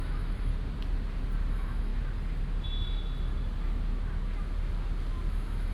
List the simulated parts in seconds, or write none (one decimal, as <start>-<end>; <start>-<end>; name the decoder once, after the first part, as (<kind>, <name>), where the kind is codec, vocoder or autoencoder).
0.0-0.5 (autoencoder, DAC-VAE); 1.5-1.9; 5.3-5.7